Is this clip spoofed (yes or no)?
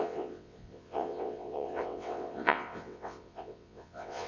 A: yes